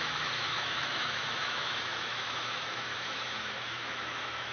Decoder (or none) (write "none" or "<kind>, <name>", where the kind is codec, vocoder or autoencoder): autoencoder, DAC-VAE